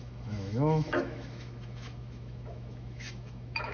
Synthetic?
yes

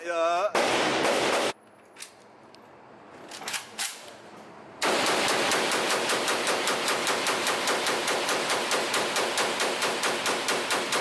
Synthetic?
no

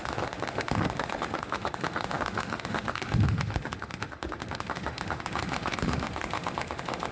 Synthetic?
yes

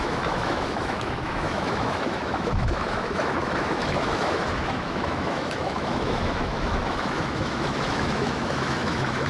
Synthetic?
yes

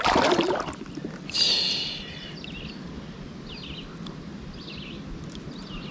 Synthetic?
no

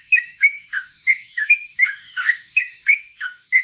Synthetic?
yes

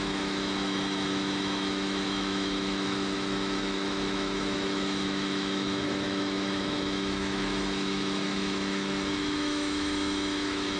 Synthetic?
yes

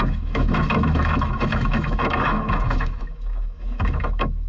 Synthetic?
yes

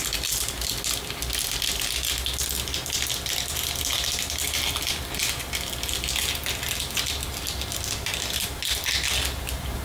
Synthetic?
no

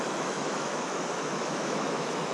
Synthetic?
yes